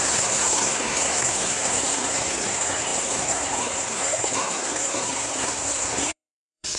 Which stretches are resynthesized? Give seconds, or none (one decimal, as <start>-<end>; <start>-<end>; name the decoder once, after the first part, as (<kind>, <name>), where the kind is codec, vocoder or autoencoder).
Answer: 0.0-6.8 (codec, SNAC)